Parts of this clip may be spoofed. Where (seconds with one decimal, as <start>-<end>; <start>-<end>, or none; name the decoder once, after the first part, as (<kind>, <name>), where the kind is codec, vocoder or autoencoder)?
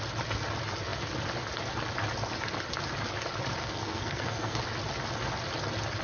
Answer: 3.6-4.6 (codec, SNAC)